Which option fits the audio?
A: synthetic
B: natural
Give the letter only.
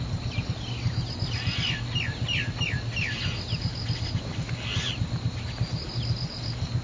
B